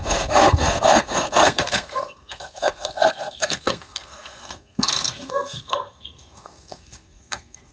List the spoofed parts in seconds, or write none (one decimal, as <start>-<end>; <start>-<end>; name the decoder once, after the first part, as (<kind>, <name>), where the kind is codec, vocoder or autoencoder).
0.0-7.7 (codec, SNAC)